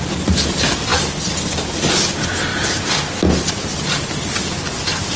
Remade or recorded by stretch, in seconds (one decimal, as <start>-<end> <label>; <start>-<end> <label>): 0.0-5.2 recorded